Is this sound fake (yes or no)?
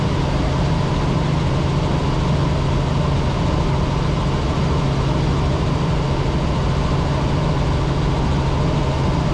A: no